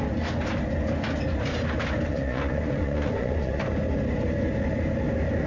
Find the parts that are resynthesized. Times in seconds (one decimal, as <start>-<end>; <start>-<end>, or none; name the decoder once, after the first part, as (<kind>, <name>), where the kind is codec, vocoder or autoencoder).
2.1-3.6 (vocoder, Vocos)